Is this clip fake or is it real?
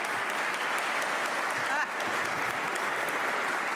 real